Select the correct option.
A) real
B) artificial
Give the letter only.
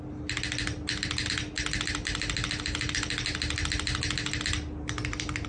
A